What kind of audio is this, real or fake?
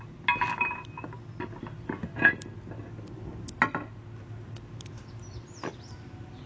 real